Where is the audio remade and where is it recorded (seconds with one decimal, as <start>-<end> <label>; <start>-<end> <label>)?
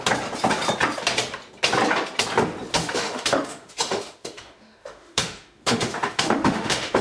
0.0-2.7 recorded; 2.7-7.0 remade